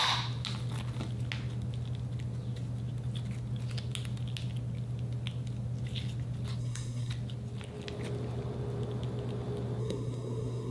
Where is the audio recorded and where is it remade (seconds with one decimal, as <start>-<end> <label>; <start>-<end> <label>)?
0.0-6.6 recorded; 6.6-7.1 remade; 7.1-9.8 recorded; 9.8-10.7 remade